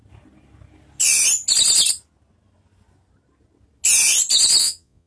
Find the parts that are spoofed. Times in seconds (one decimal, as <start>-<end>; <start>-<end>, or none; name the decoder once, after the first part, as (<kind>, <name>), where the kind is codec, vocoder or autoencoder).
4.6-5.1 (vocoder, Vocos)